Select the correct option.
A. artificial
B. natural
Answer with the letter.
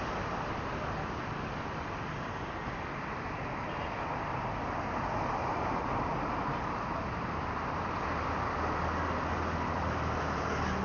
B